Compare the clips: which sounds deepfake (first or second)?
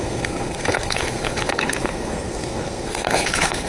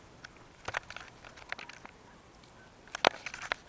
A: first